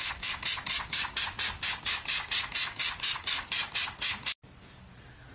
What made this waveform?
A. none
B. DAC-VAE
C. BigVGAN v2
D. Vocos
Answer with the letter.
A